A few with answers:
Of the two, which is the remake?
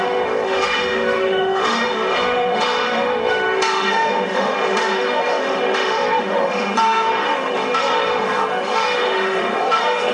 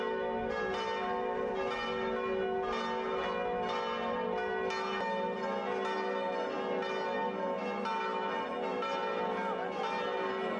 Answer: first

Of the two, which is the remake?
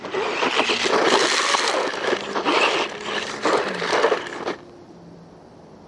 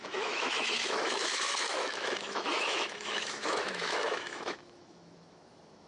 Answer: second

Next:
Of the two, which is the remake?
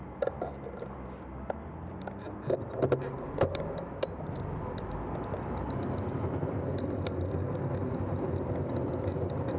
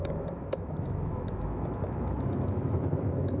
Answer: second